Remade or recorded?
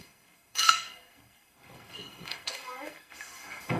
remade